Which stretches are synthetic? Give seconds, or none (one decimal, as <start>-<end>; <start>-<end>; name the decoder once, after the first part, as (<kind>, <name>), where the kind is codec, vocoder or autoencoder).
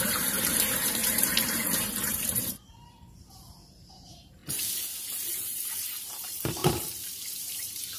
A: 0.0-4.4 (vocoder, BigVGAN v2); 5.3-6.6; 7.4-8.0